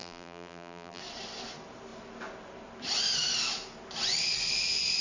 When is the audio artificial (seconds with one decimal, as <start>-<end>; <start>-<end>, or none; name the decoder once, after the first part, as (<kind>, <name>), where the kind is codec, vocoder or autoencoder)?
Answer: 0.0-1.0 (vocoder, BigVGAN v2)